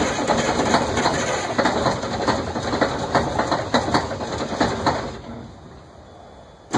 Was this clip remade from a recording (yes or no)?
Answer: no